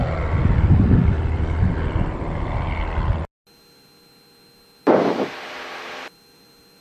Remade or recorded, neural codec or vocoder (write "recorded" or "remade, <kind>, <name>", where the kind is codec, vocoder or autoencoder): recorded